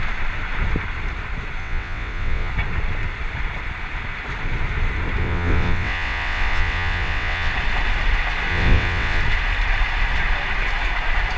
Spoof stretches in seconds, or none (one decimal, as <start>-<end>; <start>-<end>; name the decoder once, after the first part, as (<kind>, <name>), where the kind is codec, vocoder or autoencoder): 1.6-2.5 (vocoder, WaveNeXt); 5.2-7.5; 8.5-9.2